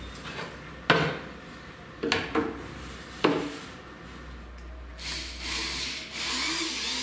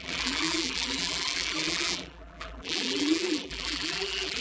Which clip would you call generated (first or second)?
second